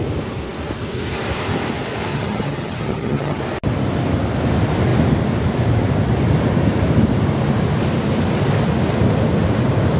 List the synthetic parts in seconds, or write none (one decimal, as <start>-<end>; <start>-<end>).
2.1-3.4